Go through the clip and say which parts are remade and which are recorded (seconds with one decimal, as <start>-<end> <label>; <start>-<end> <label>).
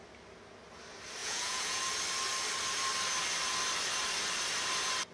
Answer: 0.0-1.2 recorded; 1.2-1.8 remade; 1.8-5.1 recorded